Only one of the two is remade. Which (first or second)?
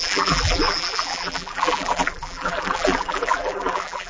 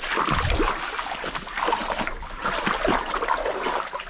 first